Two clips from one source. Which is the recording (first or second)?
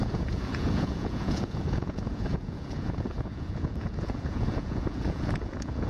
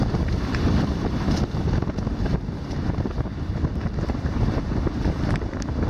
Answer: second